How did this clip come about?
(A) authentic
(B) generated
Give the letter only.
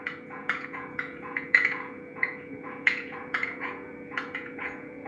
B